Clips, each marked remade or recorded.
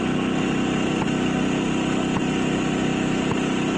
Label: recorded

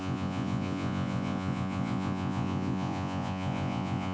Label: remade